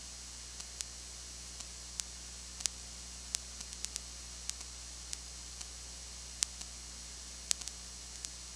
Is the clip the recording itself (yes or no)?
yes